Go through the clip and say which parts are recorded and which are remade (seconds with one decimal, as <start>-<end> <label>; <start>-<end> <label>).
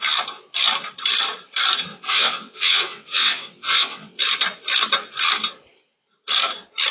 0.0-1.9 recorded; 1.9-4.2 remade; 4.2-6.9 recorded